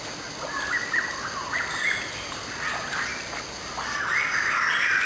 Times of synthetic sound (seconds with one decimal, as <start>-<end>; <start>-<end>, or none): none